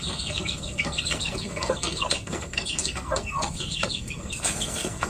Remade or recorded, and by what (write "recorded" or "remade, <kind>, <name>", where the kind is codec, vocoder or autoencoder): remade, codec, SNAC